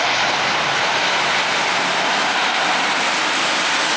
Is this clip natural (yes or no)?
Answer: yes